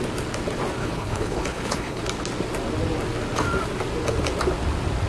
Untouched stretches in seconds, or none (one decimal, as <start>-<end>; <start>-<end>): 0.0-0.8; 2.0-5.1